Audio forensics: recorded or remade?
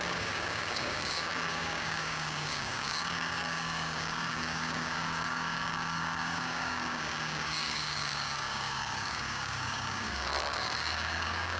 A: remade